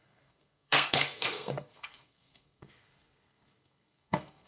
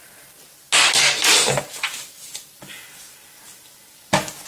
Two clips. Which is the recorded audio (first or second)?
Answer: second